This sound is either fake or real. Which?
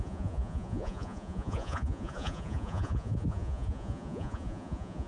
fake